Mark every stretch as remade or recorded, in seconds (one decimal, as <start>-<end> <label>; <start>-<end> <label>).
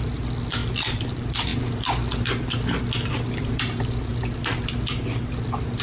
0.0-0.6 remade; 0.6-1.1 recorded; 1.1-1.5 remade; 1.5-3.6 recorded; 3.6-4.1 remade; 4.1-5.3 recorded; 5.3-5.8 remade